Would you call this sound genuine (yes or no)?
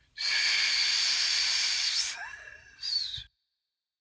yes